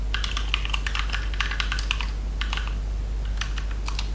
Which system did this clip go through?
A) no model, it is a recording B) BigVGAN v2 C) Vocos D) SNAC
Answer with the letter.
A